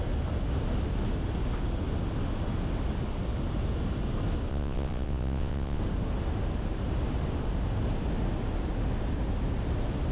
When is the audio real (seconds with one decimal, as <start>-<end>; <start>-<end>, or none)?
0.0-4.5; 5.8-10.1

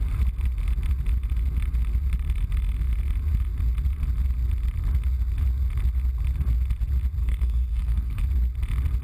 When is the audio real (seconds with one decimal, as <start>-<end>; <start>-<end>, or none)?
0.0-7.2; 8.2-9.0

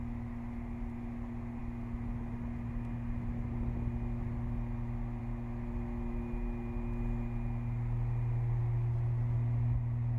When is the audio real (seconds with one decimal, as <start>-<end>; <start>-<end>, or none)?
0.0-10.2

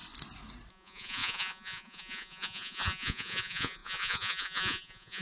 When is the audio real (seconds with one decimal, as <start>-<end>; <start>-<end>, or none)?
0.0-0.7

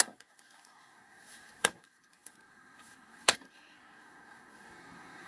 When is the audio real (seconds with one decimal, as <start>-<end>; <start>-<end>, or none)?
none

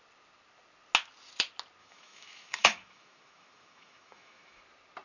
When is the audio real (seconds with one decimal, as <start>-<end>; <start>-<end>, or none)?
0.0-1.8; 4.6-5.0

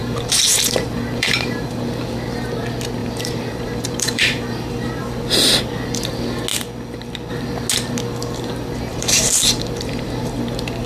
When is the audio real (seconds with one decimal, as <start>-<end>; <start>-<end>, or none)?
1.8-3.0; 4.9-8.9; 10.4-10.9

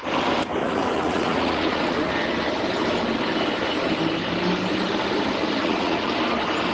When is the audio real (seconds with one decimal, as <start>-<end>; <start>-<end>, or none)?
0.0-0.6; 2.1-5.6; 6.1-6.7